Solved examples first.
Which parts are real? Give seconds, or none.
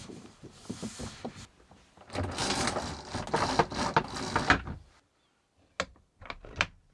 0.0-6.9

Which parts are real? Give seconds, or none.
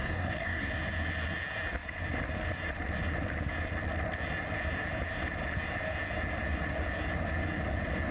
0.7-8.1